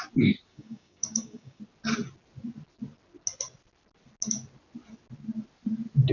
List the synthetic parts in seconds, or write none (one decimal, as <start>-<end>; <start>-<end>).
0.5-1.6